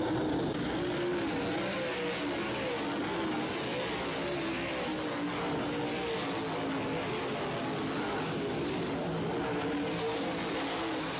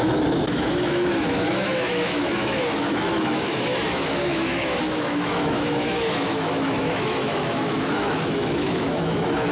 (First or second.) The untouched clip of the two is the first